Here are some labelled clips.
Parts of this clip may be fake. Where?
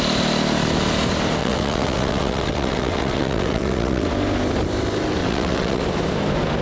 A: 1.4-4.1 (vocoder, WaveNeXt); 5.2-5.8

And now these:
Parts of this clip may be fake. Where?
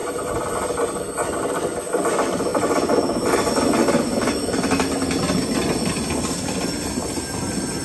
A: none